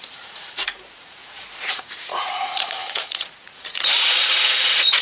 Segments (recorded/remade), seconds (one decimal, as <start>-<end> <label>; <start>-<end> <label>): 0.0-5.0 remade